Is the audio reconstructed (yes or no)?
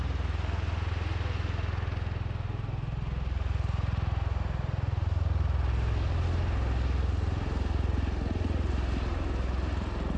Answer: no